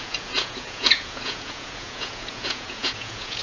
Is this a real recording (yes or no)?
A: no